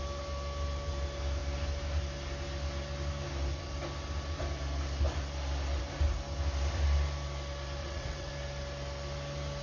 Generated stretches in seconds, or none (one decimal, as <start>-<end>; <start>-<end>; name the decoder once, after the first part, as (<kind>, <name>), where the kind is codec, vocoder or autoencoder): 7.8-8.3 (vocoder, WaveNeXt)